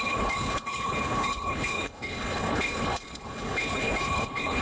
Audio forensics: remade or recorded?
remade